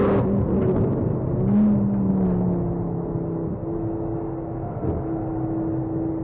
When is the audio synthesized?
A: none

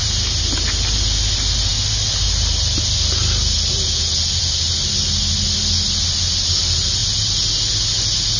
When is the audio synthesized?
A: none

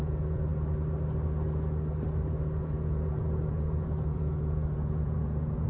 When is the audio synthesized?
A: 0.0-0.5 (vocoder, Vocos); 2.6-5.7